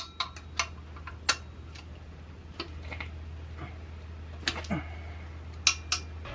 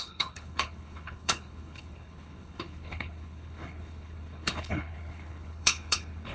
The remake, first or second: second